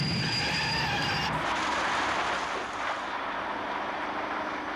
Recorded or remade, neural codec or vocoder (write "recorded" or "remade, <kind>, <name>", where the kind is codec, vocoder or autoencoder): recorded